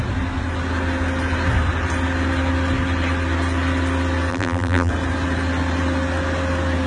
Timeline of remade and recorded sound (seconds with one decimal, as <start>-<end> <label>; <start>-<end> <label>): 0.0-4.3 recorded; 4.3-4.9 remade; 4.9-6.9 recorded